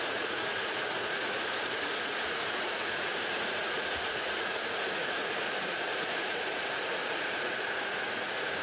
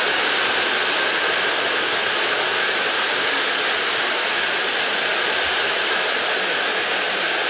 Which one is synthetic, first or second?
first